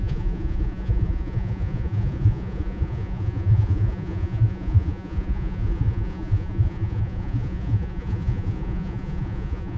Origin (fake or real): fake